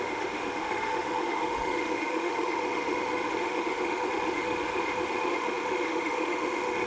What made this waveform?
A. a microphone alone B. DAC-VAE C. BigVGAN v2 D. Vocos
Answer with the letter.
B